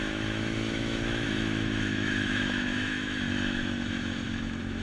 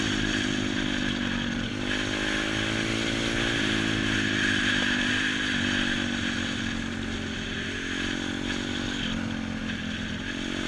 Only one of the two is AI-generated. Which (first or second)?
first